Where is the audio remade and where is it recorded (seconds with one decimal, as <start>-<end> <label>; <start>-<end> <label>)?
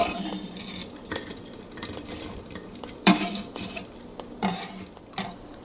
0.0-3.4 remade; 3.4-5.6 recorded